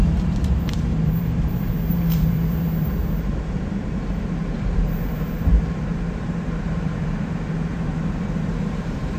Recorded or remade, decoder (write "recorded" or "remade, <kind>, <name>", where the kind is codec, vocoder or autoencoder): remade, vocoder, BigVGAN v2